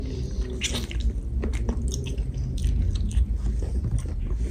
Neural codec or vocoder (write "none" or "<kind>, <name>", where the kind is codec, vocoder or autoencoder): none